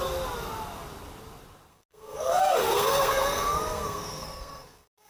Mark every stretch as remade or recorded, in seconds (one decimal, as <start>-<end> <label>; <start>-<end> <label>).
0.0-1.7 recorded; 1.7-5.1 remade